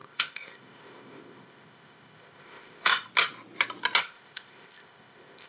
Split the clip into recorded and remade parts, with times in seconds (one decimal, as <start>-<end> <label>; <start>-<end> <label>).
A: 0.0-2.9 remade; 2.9-4.0 recorded; 4.0-5.5 remade